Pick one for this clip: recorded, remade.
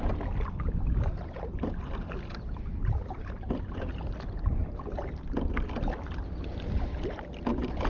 recorded